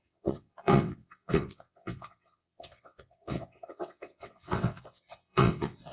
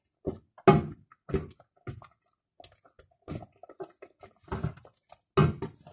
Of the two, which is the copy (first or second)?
first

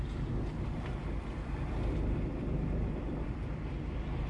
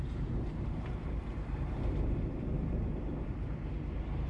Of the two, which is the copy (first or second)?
second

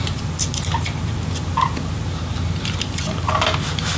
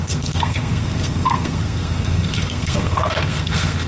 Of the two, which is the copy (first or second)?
second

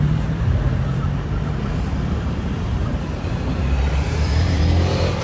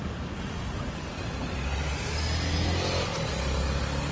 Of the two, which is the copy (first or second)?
first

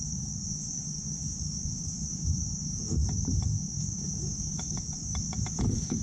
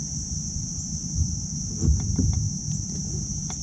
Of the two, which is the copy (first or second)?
first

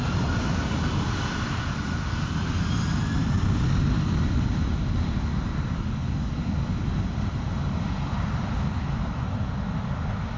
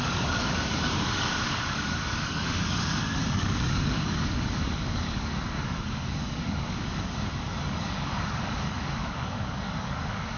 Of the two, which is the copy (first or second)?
second